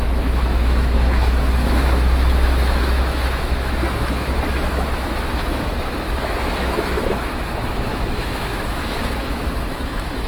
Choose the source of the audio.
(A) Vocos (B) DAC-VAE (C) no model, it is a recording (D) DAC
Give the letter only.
B